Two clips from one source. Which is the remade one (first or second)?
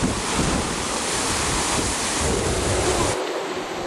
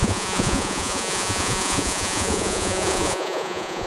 second